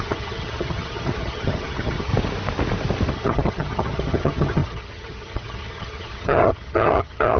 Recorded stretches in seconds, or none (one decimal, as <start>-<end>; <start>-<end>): 2.1-3.1

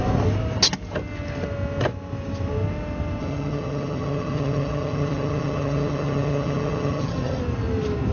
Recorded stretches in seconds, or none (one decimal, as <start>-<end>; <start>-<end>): 0.0-3.2; 7.4-8.1

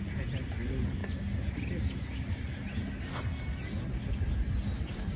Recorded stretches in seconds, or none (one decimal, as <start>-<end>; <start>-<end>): 0.0-5.2